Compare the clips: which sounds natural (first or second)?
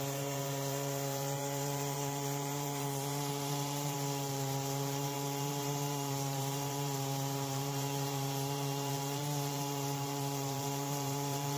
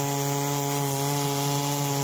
second